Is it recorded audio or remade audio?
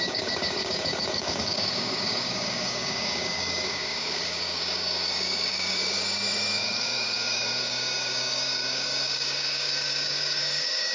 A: remade